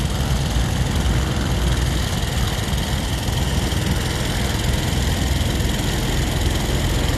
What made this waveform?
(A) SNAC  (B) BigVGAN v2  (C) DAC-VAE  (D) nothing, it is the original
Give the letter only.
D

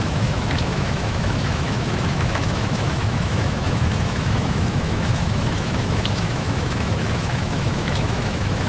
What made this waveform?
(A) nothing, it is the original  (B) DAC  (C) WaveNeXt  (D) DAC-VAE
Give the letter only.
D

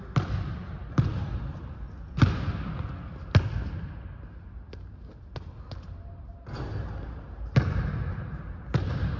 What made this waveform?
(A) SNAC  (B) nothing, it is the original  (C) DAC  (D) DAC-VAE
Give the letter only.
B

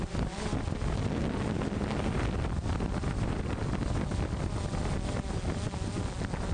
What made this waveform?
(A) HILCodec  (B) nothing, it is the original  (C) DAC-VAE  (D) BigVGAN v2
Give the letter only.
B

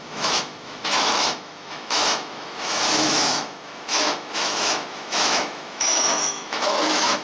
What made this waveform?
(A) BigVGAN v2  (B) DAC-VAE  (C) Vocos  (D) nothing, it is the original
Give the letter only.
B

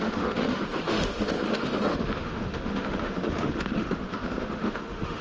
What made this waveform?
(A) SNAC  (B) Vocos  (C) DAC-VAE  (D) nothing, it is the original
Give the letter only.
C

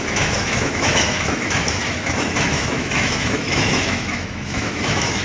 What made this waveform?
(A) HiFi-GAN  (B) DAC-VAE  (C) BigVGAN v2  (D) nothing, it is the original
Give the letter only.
B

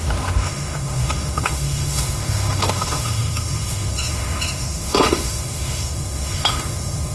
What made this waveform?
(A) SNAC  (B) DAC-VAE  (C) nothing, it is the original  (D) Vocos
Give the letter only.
B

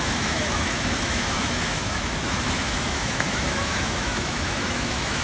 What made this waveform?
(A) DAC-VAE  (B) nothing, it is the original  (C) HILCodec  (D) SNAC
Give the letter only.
A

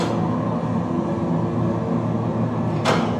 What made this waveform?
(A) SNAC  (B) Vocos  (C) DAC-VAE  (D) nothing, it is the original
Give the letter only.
D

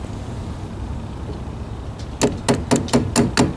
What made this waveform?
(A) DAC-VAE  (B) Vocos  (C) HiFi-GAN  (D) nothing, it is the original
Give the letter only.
D